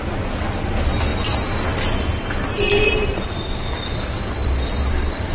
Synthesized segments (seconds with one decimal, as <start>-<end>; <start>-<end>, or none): 2.8-5.3